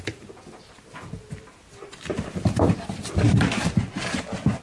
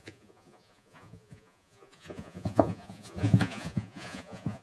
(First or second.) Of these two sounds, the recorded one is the first